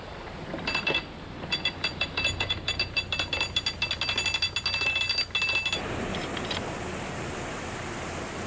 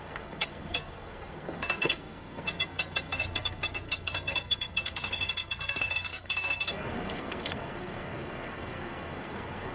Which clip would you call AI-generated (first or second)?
second